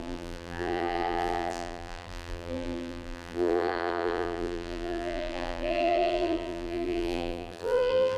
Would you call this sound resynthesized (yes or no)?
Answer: yes